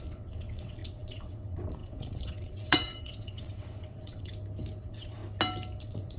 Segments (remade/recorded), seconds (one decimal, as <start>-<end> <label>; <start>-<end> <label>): 0.0-4.3 remade; 4.3-4.8 recorded; 4.8-5.2 remade; 5.2-5.8 recorded; 5.8-6.2 remade